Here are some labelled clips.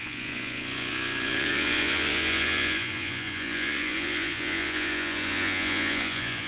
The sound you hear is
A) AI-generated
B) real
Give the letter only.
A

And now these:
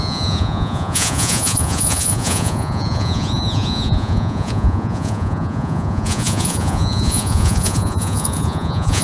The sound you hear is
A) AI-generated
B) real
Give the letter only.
A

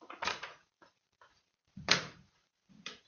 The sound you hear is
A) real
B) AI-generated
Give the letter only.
B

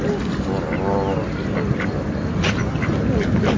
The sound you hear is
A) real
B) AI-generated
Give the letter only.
A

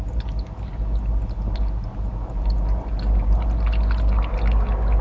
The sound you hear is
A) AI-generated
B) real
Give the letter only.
B